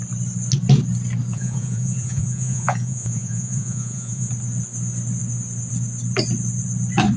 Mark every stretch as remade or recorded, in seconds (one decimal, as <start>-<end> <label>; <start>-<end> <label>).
0.0-1.3 recorded; 1.3-4.3 remade; 4.3-7.2 recorded